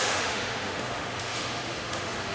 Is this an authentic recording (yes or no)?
no